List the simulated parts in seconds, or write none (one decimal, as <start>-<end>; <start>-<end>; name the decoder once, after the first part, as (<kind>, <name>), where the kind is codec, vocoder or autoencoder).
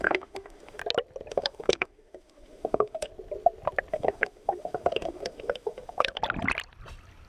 0.0-0.8 (autoencoder, DAC-VAE); 1.3-3.1; 3.9-6.2